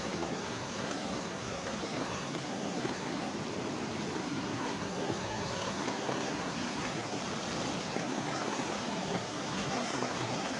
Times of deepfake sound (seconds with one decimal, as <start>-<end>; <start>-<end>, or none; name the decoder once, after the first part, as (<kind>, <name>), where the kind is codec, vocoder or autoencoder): 0.0-3.3 (codec, SNAC); 4.2-7.2; 7.8-10.6